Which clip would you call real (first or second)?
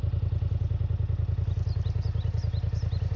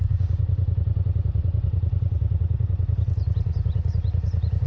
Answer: first